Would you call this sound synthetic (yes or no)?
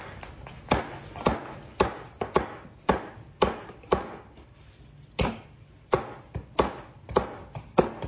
no